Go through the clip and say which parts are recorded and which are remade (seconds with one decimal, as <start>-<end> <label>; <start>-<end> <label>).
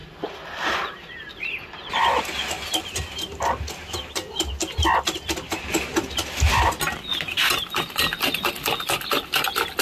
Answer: 0.0-9.8 recorded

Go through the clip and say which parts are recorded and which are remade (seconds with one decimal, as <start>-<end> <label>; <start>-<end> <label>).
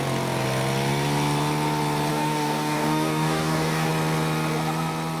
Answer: 0.0-2.1 recorded; 2.1-3.9 remade; 3.9-5.2 recorded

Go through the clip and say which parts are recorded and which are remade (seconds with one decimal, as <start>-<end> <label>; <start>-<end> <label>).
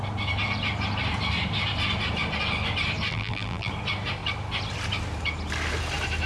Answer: 0.0-3.1 recorded; 3.1-3.7 remade; 3.7-6.3 recorded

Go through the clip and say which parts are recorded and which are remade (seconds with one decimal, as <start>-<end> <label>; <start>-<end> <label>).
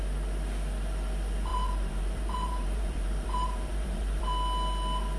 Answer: 0.0-1.5 recorded; 1.5-4.2 remade; 4.2-5.2 recorded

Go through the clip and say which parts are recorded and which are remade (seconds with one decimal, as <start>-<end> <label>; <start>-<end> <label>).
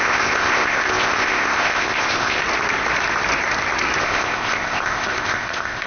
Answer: 0.0-2.4 remade; 2.4-4.0 recorded; 4.0-5.9 remade